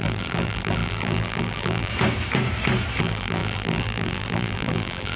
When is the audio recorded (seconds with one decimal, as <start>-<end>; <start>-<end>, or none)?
1.9-3.0

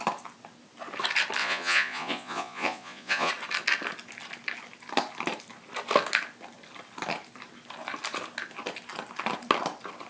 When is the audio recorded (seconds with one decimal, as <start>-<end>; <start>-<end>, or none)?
0.0-1.4; 3.3-10.1

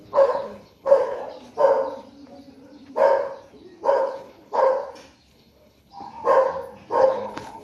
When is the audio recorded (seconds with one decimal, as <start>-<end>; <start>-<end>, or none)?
1.2-3.9; 4.7-5.3; 5.9-7.0

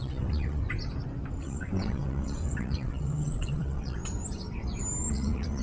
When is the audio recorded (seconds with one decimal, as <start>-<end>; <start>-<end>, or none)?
0.6-1.4; 4.0-5.1